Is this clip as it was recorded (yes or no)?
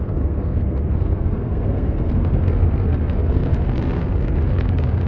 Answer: no